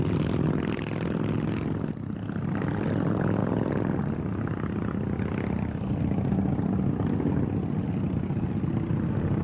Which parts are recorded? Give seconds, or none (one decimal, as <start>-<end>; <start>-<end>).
0.0-9.4